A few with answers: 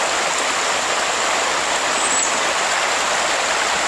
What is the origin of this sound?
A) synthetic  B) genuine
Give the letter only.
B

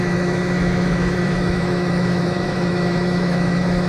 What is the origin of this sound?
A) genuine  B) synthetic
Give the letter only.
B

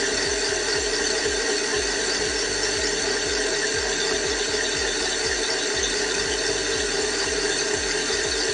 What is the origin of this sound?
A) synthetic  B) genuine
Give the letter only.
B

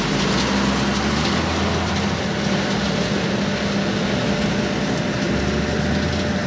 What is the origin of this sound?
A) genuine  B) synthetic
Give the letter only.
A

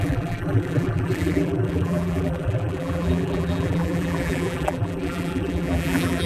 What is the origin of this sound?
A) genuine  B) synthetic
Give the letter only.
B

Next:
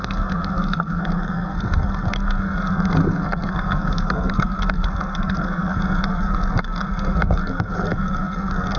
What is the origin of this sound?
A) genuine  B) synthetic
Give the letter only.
B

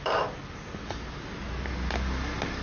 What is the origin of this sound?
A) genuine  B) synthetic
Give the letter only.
A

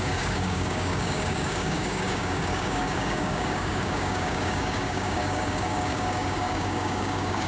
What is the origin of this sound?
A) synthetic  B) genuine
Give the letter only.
A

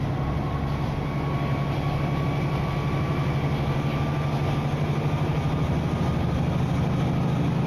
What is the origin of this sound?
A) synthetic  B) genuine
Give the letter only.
B